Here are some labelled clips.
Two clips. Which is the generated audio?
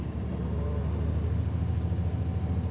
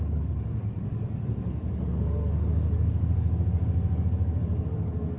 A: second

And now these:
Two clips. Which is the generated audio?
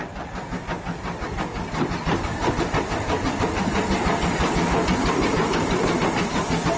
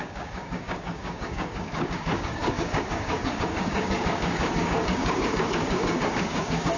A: second